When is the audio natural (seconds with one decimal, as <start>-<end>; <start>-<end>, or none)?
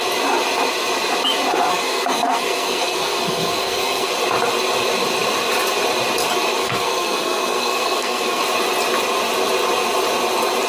0.0-1.7; 4.1-6.6; 8.4-10.7